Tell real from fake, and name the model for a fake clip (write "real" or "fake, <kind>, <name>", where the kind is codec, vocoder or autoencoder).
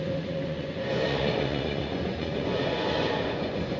fake, vocoder, Vocos